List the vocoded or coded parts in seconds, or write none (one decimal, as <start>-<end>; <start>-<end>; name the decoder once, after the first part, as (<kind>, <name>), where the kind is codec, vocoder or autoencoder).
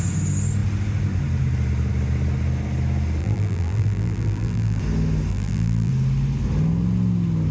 3.2-4.8 (vocoder, BigVGAN v2); 5.3-5.9